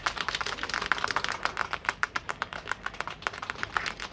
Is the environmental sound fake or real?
real